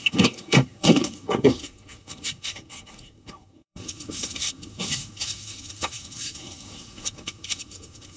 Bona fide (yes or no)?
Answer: no